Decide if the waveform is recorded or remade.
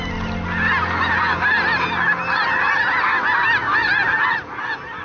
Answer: recorded